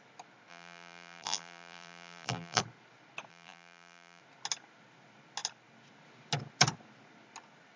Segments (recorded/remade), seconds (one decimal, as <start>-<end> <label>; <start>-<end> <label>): 0.0-0.5 recorded; 0.5-2.6 remade; 2.6-3.3 recorded; 3.3-4.2 remade; 4.2-7.8 recorded

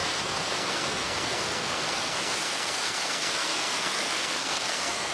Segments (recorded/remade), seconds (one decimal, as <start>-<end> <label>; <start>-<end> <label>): 0.0-5.1 remade

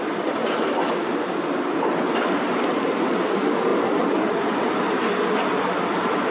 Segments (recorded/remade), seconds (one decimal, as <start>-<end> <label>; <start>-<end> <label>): 0.0-6.3 recorded

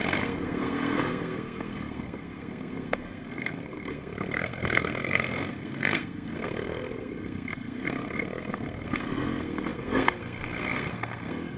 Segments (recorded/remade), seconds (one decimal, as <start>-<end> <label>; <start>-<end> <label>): 0.0-11.6 remade

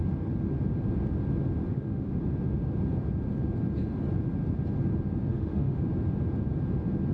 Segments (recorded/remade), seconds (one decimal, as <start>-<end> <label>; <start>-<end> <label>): 0.0-1.7 recorded; 1.7-2.2 remade; 2.2-5.3 recorded; 5.3-5.8 remade; 5.8-7.1 recorded